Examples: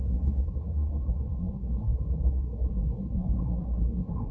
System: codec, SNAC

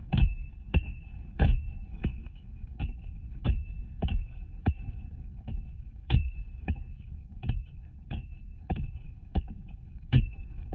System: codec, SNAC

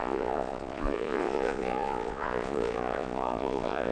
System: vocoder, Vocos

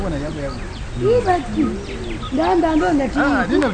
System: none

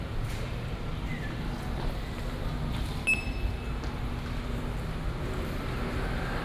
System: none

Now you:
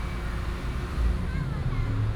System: none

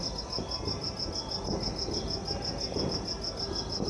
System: none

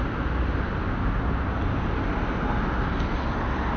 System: none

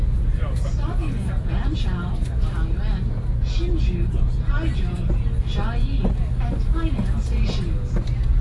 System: none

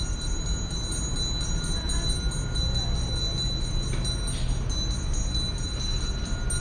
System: none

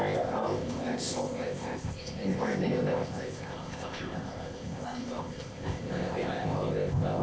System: codec, ZipCodec